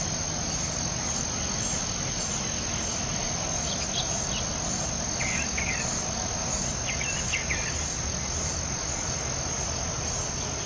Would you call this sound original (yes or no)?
yes